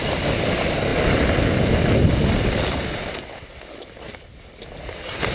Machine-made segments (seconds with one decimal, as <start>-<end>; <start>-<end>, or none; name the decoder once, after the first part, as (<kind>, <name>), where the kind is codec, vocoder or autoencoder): none